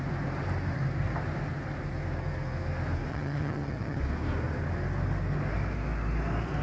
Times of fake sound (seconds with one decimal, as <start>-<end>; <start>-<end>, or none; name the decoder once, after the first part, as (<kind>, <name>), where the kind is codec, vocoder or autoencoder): 3.1-4.0 (vocoder, HiFi-GAN)